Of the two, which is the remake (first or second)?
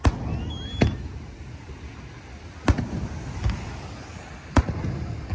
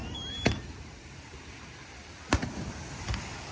second